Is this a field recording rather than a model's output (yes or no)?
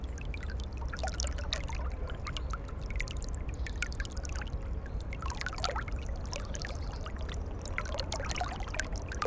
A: yes